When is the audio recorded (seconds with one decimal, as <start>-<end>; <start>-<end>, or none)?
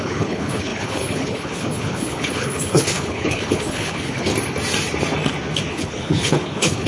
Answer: 4.3-5.7